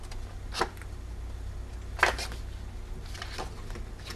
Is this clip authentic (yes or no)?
yes